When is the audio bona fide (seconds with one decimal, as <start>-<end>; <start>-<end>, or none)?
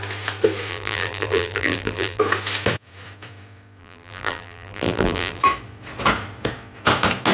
0.0-0.7; 2.2-3.8; 5.4-7.3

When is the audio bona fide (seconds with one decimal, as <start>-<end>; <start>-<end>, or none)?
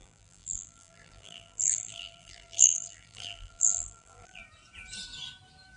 4.4-5.8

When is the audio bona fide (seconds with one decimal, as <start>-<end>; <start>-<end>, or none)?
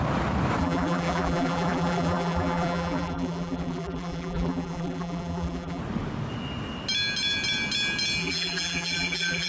0.0-0.6; 5.8-8.2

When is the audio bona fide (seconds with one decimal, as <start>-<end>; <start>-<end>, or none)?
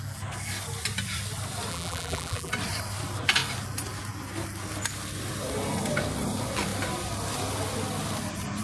0.0-1.7; 2.5-8.6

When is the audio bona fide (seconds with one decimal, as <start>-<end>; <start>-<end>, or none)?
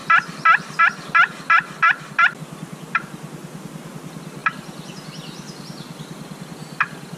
0.8-7.2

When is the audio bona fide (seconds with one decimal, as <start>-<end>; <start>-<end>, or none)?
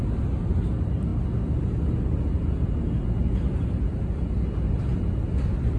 0.0-5.8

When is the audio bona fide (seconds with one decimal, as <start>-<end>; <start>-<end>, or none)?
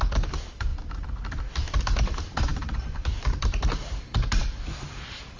0.7-1.8